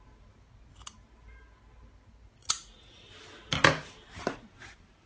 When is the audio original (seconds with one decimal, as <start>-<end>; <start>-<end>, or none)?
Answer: 0.0-2.4; 3.1-5.1